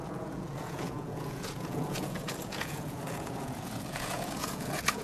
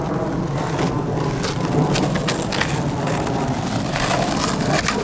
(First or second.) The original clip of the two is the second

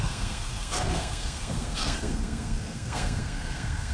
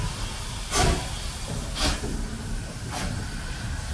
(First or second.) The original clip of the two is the second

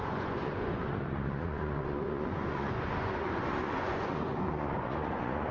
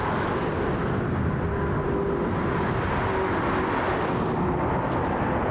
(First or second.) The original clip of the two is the second